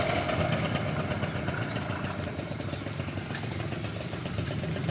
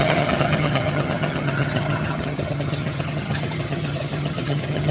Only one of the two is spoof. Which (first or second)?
second